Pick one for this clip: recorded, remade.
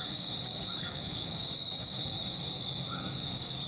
remade